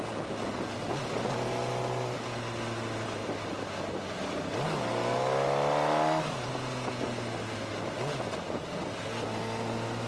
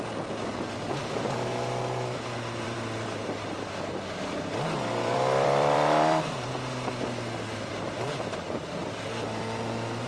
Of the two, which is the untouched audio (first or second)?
first